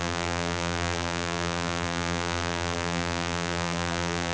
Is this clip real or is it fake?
fake